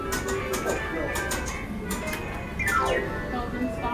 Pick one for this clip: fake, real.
real